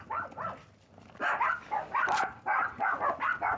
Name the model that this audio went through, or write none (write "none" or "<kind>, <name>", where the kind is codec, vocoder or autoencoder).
none